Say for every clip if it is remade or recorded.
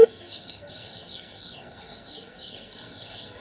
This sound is remade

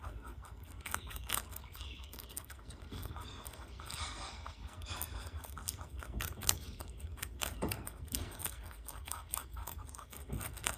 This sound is remade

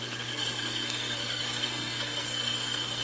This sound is remade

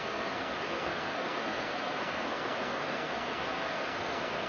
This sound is remade